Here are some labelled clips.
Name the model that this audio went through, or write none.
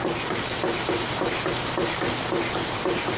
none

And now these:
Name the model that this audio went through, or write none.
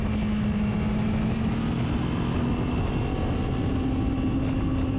none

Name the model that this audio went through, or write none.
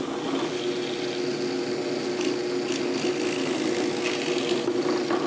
none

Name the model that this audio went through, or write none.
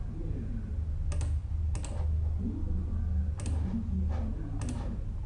none